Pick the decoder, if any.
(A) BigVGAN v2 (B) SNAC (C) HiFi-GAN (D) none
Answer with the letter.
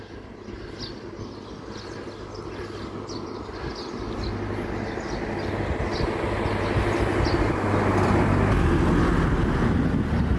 D